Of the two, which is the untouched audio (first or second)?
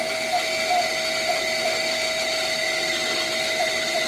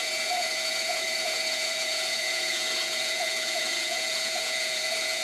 first